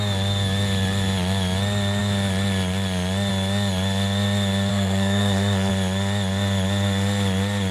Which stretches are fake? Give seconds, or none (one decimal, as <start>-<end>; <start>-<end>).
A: 4.7-5.7